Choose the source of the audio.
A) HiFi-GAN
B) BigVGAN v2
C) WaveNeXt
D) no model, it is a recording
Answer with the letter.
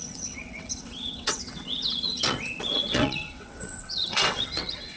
C